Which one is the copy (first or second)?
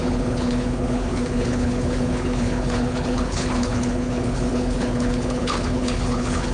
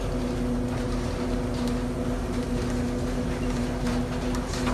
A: first